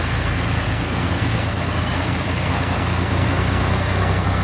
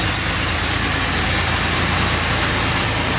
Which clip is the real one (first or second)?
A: second